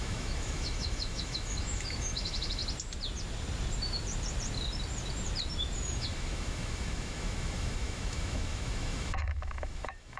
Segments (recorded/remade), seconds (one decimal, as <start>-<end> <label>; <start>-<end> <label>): 0.0-2.6 remade; 2.6-6.0 recorded; 6.0-10.2 remade